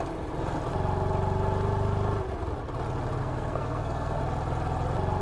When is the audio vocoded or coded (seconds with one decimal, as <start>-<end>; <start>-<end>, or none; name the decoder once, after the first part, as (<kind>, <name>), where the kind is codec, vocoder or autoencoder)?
3.2-4.2 (codec, SNAC)